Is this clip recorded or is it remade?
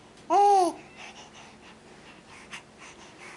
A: recorded